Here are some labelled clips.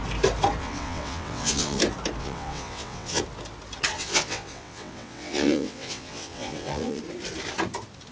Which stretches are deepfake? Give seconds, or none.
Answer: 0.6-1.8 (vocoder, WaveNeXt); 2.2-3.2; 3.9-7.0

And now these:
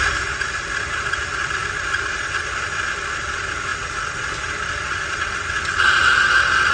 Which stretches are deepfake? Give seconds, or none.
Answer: none

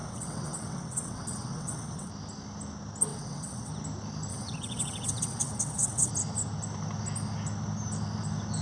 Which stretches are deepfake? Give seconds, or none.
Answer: 0.0-2.1 (vocoder, WaveNeXt); 3.1-3.7; 4.3-6.1

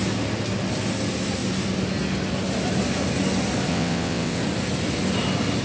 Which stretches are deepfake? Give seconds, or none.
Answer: 3.7-4.4 (vocoder, WaveNeXt)

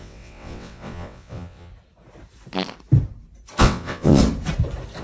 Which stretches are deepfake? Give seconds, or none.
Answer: 0.0-1.7 (vocoder, WaveNeXt); 3.6-4.2

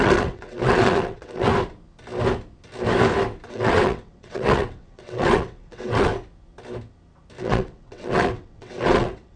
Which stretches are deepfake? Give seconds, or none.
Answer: 0.0-1.5 (vocoder, WaveNeXt); 3.5-6.1; 7.4-9.4